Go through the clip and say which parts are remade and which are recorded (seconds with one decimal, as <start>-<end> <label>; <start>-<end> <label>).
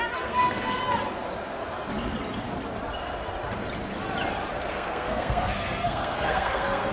0.0-0.8 remade; 0.8-4.7 recorded; 4.7-6.9 remade